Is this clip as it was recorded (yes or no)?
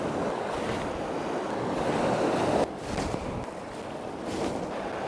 yes